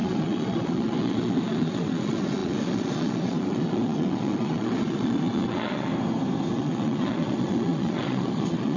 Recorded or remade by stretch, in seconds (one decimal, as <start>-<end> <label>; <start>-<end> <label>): 0.0-5.9 remade; 5.9-6.5 recorded; 6.5-8.8 remade